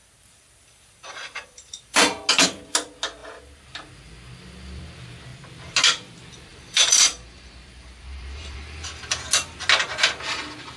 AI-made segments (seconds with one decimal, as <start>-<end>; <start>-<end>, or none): 0.0-2.3; 6.5-9.1